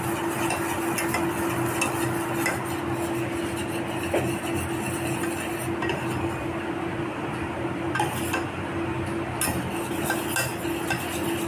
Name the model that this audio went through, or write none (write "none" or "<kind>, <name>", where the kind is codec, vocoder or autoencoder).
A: none